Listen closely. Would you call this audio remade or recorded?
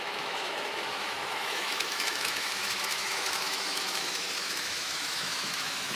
remade